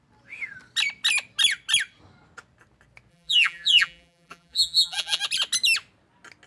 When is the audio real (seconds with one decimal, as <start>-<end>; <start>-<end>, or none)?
0.0-3.1; 5.2-6.5